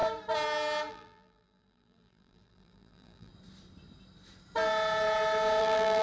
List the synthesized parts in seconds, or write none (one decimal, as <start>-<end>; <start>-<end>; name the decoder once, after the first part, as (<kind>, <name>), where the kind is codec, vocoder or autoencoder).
0.9-3.3 (vocoder, BigVGAN v2); 5.6-6.0